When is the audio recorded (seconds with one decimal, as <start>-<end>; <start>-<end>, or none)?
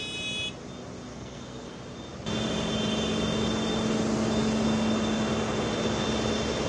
0.0-1.1; 1.8-6.7